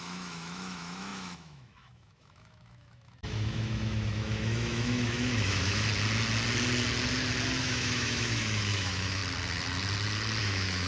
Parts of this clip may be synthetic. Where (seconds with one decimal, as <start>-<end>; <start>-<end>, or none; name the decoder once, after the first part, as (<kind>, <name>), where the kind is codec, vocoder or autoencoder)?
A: 0.0-5.9 (autoencoder, DAC-VAE); 7.6-9.2; 10.4-10.9